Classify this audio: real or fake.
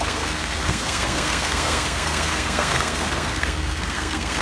fake